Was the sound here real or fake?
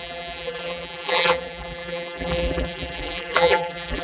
fake